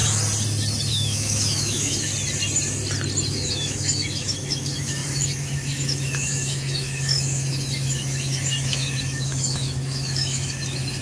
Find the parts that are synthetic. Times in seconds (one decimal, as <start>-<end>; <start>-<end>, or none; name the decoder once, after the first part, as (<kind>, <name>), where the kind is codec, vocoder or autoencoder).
0.9-2.1 (autoencoder, DAC-VAE); 3.3-11.0